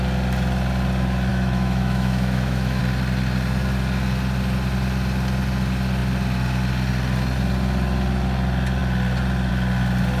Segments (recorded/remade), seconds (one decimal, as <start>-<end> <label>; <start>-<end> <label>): 0.0-1.3 recorded; 1.3-2.8 remade; 2.8-10.2 recorded